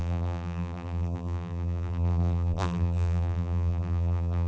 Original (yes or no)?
no